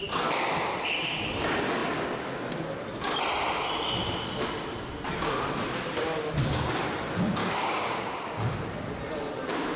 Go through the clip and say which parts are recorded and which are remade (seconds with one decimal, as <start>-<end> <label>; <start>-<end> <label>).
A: 0.0-7.4 recorded; 7.4-8.3 remade; 8.3-9.8 recorded